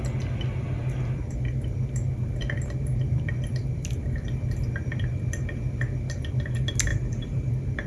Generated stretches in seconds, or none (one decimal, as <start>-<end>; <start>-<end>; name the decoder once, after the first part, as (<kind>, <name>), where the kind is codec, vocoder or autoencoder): 6.9-7.5 (vocoder, BigVGAN v2)